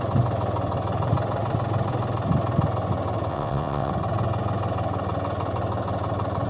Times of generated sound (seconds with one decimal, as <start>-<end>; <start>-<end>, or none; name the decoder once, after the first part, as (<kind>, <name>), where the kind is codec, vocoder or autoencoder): 3.3-3.9 (vocoder, WaveNeXt)